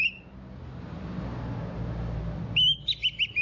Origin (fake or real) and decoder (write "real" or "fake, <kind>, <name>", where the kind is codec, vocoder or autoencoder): real